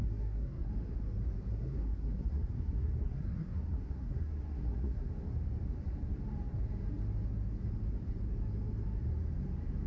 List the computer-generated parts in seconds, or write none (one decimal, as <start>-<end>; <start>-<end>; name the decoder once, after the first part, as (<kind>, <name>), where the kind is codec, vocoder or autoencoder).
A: 0.0-0.7 (codec, SNAC); 1.5-5.1